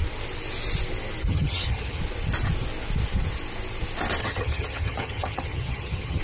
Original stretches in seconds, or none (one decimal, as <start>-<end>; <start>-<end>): 0.0-1.3; 2.0-4.2